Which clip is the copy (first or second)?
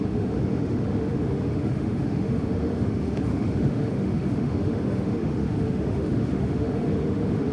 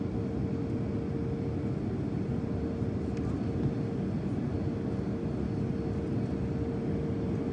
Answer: first